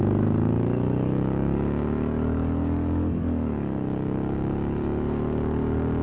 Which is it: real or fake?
fake